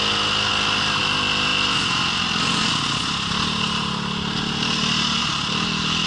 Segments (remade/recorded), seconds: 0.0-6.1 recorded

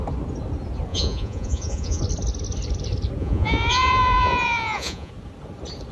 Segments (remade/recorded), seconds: 0.0-0.9 recorded; 0.9-2.0 remade; 2.0-3.2 recorded; 3.2-5.1 remade; 5.1-5.9 recorded

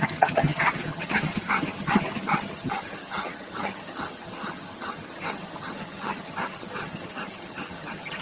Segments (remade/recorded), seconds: 0.0-8.2 remade

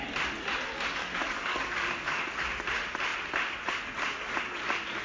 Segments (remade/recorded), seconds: 0.0-1.0 recorded; 1.0-2.4 remade; 2.4-5.0 recorded